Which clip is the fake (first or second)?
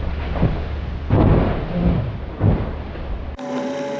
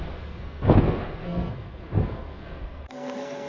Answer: second